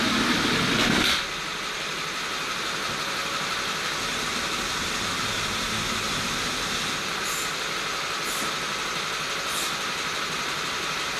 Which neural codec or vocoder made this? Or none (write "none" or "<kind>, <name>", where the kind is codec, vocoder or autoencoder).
none